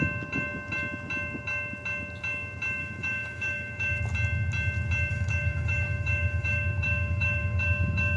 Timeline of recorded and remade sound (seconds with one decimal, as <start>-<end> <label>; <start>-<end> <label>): 0.0-2.8 recorded; 2.8-4.0 remade; 4.0-5.1 recorded; 5.1-8.2 remade